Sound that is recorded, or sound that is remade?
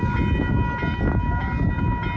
recorded